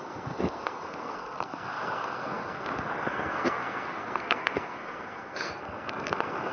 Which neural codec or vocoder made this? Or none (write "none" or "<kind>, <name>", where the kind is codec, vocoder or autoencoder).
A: codec, SNAC